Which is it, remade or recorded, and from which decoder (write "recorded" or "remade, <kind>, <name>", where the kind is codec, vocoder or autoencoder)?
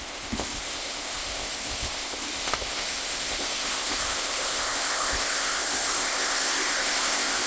remade, codec, ZipCodec